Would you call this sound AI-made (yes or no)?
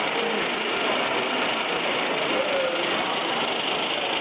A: no